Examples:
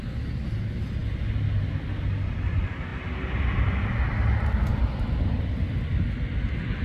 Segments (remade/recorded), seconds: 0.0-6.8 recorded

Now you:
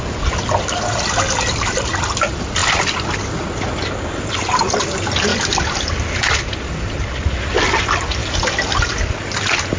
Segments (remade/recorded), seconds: 0.0-5.3 recorded; 5.3-6.3 remade; 6.3-9.8 recorded

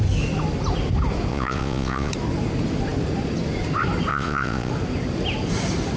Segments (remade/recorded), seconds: 0.0-1.3 recorded; 1.3-2.1 remade; 2.1-4.1 recorded; 4.1-4.7 remade; 4.7-6.0 recorded

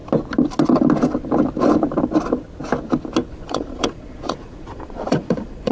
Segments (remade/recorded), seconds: 0.0-3.3 recorded; 3.3-5.7 remade

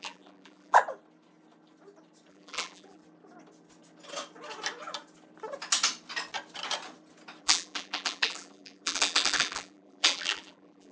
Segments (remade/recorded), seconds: 0.0-0.8 remade; 0.8-2.3 recorded; 2.3-3.0 remade; 3.0-7.4 recorded; 7.4-10.9 remade

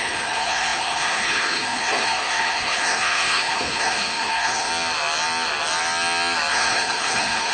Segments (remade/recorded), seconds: 0.0-4.7 remade; 4.7-6.5 recorded; 6.5-7.5 remade

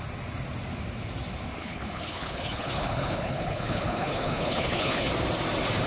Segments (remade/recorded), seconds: 0.0-1.6 recorded; 1.6-5.1 remade; 5.1-5.9 recorded